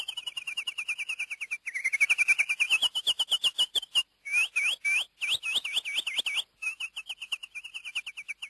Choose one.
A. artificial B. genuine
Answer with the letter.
B